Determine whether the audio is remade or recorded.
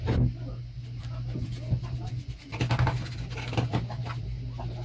recorded